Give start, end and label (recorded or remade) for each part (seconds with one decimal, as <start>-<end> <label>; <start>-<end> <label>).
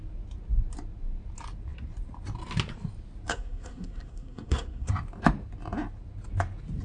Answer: 0.0-3.3 recorded; 3.3-4.9 remade; 4.9-6.8 recorded